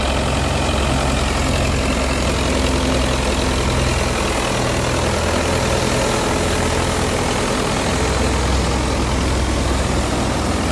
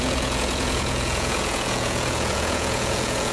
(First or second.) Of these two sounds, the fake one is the second